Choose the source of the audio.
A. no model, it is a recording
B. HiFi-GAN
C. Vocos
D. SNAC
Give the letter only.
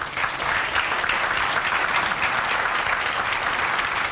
A